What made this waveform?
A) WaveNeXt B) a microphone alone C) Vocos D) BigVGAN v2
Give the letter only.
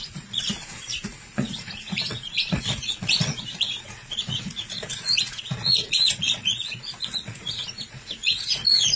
C